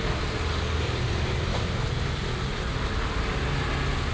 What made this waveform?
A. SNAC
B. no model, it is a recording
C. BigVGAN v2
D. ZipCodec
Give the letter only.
B